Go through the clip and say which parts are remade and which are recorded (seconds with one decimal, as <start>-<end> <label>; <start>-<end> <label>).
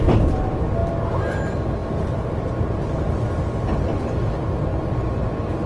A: 0.0-5.7 recorded